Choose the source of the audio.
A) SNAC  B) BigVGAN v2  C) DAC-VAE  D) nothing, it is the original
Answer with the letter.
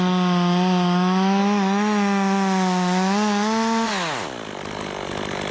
D